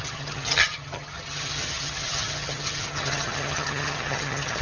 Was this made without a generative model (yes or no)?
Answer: no